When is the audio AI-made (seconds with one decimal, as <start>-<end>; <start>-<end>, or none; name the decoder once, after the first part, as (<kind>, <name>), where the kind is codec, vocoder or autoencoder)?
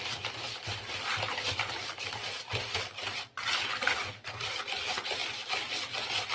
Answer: 0.0-6.3 (vocoder, BigVGAN v2)